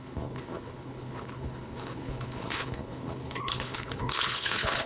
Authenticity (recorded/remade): remade